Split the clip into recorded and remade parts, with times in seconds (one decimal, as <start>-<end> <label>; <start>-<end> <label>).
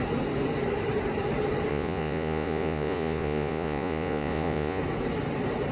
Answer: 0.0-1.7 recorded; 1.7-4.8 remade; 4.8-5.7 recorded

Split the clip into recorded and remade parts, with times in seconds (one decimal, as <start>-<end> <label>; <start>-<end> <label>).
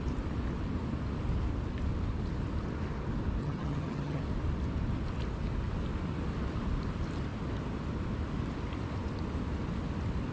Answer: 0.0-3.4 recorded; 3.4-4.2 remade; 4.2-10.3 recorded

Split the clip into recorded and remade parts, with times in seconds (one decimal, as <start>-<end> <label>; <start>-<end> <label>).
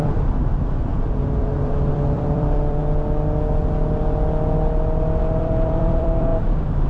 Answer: 0.0-0.9 remade; 0.9-1.9 recorded; 1.9-2.8 remade; 2.8-5.2 recorded; 5.2-6.3 remade; 6.3-6.9 recorded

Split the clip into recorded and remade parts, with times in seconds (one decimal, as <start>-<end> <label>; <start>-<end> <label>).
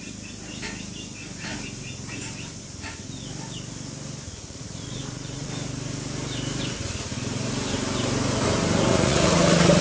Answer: 0.0-4.3 recorded; 4.3-5.5 remade; 5.5-8.9 recorded; 8.9-9.8 remade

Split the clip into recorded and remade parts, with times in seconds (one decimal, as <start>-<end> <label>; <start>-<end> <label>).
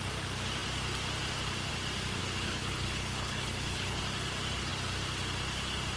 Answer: 0.0-2.2 recorded; 2.2-4.0 remade; 4.0-6.0 recorded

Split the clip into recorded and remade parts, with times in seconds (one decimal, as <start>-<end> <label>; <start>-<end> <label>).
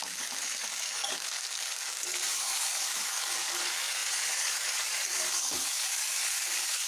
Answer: 0.0-6.9 remade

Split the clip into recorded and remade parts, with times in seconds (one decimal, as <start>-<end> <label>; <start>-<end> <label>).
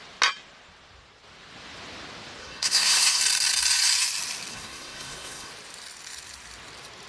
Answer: 0.0-2.4 recorded; 2.4-3.2 remade; 3.2-4.5 recorded; 4.5-5.5 remade; 5.5-7.1 recorded